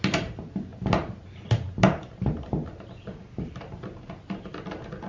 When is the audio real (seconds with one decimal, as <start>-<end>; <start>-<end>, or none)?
0.0-5.1